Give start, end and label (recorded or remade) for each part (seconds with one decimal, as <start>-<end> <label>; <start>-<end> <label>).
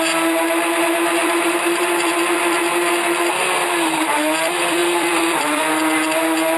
0.0-1.2 recorded; 1.2-2.6 remade; 2.6-4.8 recorded; 4.8-5.6 remade; 5.6-6.6 recorded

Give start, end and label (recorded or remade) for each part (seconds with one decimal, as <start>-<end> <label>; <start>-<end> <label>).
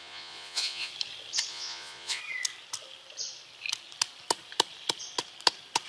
0.0-0.9 remade; 0.9-1.5 recorded; 1.5-2.2 remade; 2.2-5.9 recorded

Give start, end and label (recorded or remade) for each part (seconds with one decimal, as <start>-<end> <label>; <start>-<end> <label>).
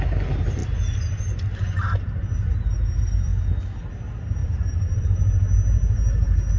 0.0-4.4 recorded; 4.4-5.0 remade; 5.0-6.6 recorded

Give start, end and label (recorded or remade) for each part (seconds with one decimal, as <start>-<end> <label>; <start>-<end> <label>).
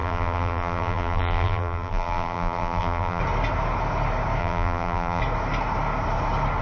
0.0-3.2 remade; 3.2-4.4 recorded; 4.4-5.2 remade; 5.2-6.6 recorded